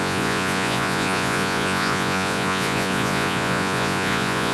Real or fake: fake